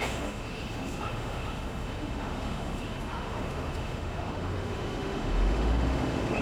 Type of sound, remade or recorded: remade